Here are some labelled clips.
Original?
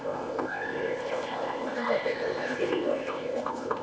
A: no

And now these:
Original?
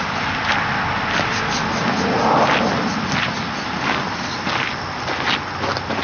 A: yes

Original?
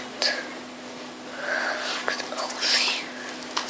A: yes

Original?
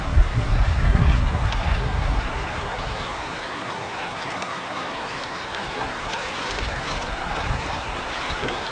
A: no